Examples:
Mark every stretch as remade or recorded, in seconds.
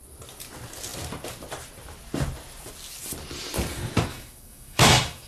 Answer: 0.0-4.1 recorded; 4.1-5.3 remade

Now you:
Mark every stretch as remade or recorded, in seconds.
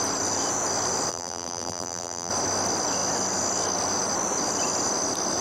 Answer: 0.0-1.1 recorded; 1.1-2.3 remade; 2.3-5.4 recorded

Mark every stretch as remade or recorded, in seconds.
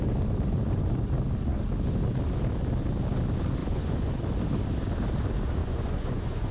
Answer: 0.0-3.6 recorded; 3.6-4.2 remade; 4.2-5.6 recorded; 5.6-6.5 remade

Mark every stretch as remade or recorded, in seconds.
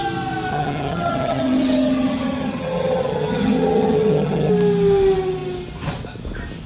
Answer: 0.0-0.5 recorded; 0.5-4.5 remade; 4.5-6.7 recorded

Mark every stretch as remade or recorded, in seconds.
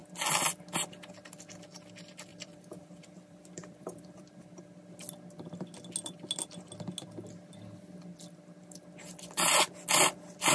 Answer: 0.0-2.3 recorded; 2.3-4.2 remade; 4.2-10.5 recorded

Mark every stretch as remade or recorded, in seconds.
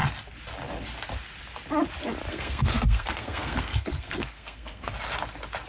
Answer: 0.0-2.3 recorded; 2.3-4.9 remade; 4.9-5.7 recorded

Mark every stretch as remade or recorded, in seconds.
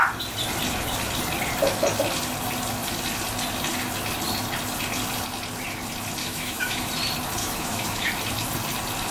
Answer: 0.0-6.2 recorded; 6.2-6.9 remade; 6.9-7.4 recorded; 7.4-8.1 remade; 8.1-9.1 recorded